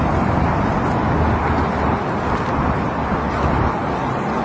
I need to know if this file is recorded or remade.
recorded